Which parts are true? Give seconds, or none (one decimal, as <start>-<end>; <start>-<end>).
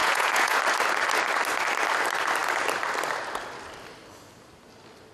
0.6-5.1